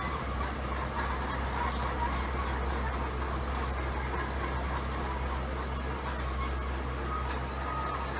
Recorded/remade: recorded